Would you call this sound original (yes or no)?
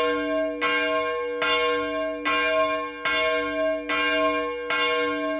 yes